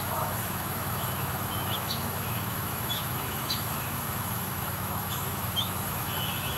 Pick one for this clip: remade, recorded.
remade